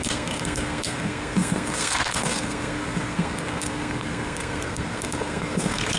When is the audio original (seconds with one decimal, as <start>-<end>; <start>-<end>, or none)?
none